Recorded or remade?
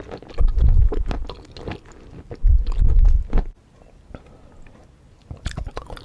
recorded